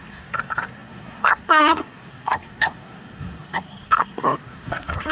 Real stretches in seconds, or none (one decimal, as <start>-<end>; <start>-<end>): none